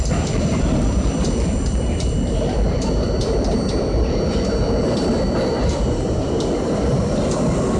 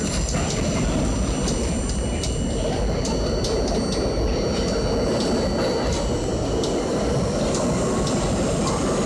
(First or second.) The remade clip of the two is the first